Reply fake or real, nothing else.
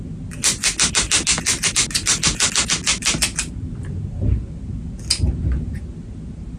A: real